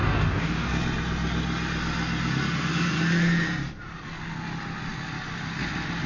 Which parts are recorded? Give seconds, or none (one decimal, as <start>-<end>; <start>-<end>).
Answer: 0.7-6.1